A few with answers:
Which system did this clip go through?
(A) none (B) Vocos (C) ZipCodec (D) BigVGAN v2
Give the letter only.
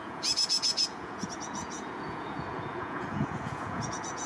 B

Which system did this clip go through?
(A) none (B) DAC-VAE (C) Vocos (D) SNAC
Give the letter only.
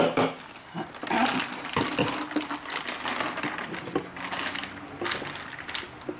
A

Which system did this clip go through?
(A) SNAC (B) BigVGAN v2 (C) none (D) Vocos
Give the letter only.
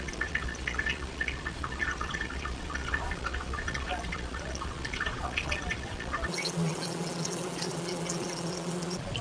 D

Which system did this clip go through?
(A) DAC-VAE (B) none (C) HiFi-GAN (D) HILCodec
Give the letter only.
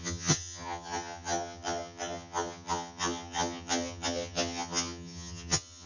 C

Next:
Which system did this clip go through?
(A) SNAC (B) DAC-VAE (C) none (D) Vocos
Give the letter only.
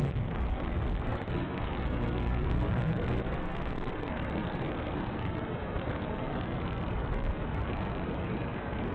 A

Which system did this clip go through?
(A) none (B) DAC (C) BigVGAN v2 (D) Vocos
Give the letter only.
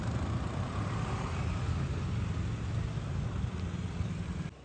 A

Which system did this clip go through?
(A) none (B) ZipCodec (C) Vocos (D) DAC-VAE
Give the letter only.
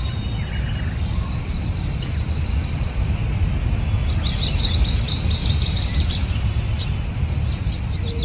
A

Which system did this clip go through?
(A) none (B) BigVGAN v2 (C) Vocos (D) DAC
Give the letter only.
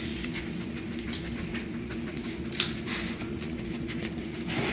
C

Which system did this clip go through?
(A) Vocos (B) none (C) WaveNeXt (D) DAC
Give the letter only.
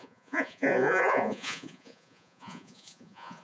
A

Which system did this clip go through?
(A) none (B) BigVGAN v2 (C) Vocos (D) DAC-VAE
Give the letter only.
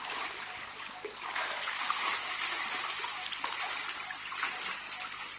A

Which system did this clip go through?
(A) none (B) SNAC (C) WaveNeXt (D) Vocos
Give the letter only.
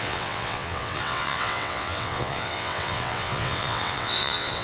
C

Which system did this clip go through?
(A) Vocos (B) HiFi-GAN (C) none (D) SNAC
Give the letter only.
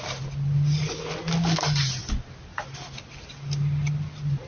C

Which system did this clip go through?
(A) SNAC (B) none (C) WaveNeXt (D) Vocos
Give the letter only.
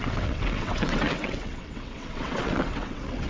C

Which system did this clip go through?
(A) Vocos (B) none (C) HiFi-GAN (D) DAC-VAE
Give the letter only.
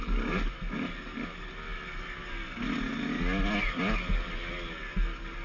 B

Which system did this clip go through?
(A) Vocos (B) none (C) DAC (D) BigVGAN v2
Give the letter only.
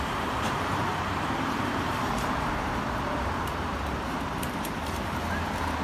D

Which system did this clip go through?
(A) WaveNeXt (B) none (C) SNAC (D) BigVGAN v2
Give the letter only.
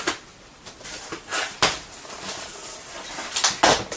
B